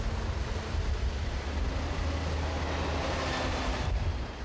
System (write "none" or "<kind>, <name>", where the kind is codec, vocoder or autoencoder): none